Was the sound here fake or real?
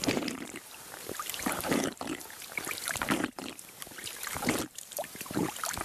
fake